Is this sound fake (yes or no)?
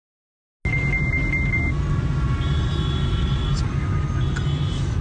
no